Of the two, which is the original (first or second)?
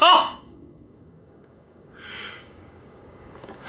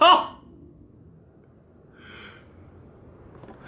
second